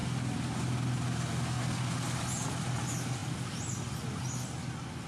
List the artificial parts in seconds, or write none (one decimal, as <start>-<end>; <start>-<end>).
none